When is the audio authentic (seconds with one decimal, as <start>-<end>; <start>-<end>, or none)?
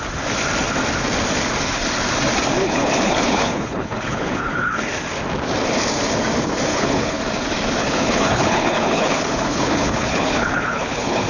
0.0-2.6; 4.8-6.7; 7.2-7.8